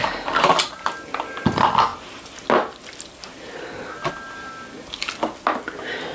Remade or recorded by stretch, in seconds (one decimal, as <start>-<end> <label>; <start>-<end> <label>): 0.0-6.1 recorded